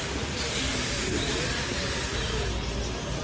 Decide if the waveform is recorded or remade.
recorded